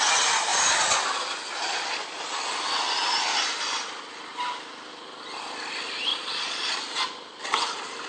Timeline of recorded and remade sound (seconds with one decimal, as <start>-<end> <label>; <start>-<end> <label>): 0.0-6.1 recorded; 6.1-6.8 remade; 6.8-8.1 recorded